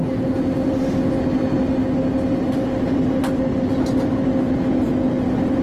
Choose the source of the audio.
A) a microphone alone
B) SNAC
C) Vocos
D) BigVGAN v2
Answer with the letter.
A